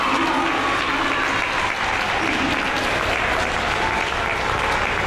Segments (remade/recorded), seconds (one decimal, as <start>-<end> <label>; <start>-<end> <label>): 0.0-5.1 recorded